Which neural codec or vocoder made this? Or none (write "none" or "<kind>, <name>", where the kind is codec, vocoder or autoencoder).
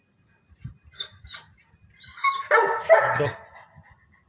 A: none